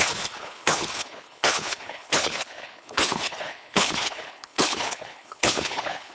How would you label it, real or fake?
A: fake